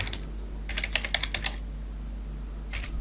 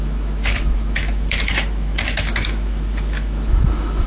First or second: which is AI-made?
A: second